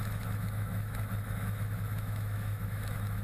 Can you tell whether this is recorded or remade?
remade